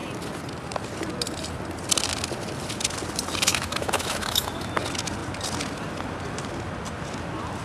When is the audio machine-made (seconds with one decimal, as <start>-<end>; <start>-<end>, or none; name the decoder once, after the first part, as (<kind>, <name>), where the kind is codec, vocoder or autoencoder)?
3.5-4.7 (autoencoder, DAC-VAE)